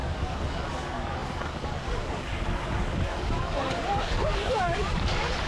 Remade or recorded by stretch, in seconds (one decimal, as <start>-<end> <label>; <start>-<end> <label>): 0.0-5.5 remade